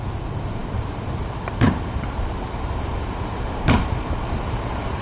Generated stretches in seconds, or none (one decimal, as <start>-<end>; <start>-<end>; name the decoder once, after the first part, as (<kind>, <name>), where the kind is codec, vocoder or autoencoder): 0.0-5.0 (vocoder, BigVGAN v2)